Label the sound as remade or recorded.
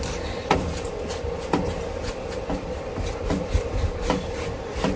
recorded